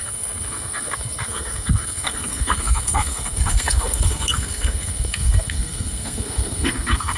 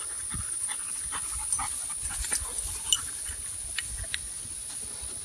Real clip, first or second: second